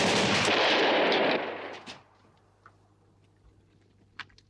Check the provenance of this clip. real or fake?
real